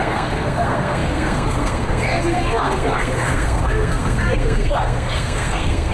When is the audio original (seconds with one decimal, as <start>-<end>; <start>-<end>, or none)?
none